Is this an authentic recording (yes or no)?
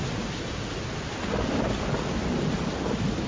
yes